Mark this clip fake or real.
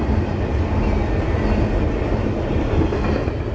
real